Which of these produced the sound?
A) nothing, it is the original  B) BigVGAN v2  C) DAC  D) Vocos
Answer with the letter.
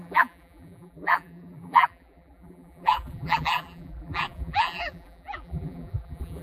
B